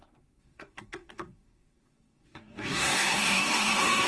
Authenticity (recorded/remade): remade